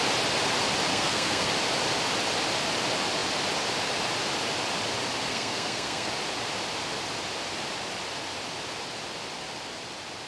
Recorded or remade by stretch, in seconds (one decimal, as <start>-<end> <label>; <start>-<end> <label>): 0.0-0.9 recorded; 0.9-1.5 remade; 1.5-5.3 recorded; 5.3-6.1 remade; 6.1-10.3 recorded